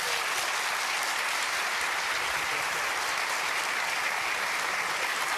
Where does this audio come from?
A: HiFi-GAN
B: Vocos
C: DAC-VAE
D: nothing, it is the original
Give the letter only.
D